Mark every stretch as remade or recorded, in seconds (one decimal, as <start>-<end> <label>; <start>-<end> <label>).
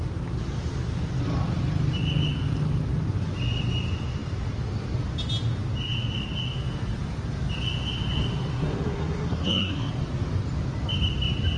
0.0-8.5 recorded; 8.5-9.9 remade; 9.9-11.6 recorded